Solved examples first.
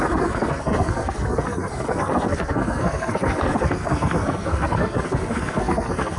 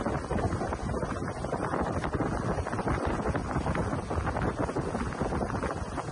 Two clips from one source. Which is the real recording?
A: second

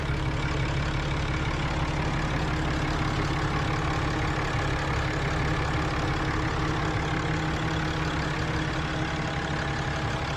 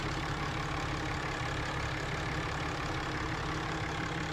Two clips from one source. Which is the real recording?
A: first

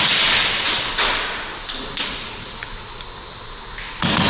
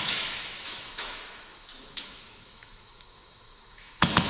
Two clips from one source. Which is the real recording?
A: first